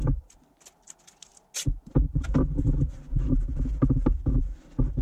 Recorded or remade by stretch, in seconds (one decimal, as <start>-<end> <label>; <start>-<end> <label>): 0.0-0.6 remade; 0.6-5.0 recorded